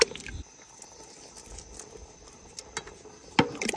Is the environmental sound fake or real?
real